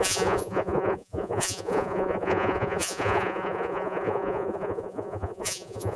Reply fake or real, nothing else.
fake